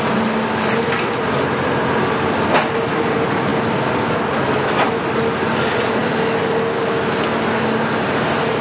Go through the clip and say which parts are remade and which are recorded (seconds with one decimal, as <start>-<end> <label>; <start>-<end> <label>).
0.0-8.6 recorded